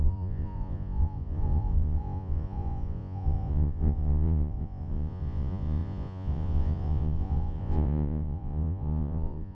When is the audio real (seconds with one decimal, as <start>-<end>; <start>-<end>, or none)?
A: none